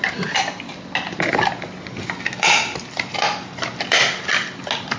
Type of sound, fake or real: real